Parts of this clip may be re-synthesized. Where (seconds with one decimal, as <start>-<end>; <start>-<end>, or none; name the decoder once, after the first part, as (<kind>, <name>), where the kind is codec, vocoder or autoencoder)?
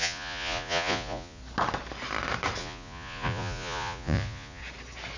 0.0-1.4 (vocoder, Vocos); 2.6-4.6